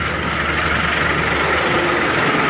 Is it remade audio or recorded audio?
recorded